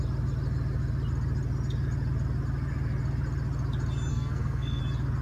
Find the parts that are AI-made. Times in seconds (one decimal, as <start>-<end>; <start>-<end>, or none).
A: 4.1-4.8